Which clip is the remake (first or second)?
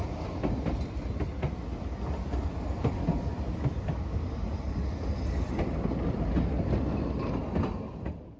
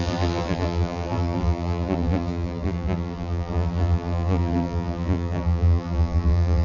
second